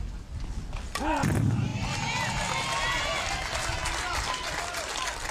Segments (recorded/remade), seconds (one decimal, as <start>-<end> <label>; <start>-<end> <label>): 0.0-5.3 recorded